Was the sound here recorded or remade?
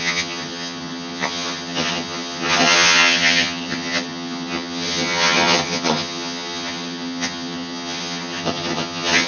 remade